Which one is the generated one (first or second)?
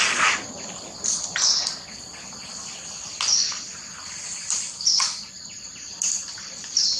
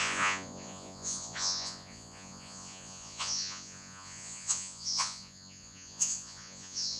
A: second